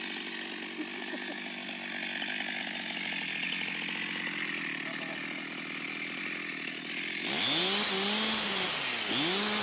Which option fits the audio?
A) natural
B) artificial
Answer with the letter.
A